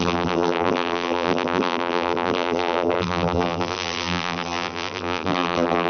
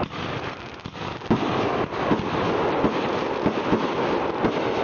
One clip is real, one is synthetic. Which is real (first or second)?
second